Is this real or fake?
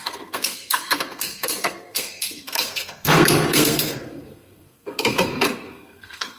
fake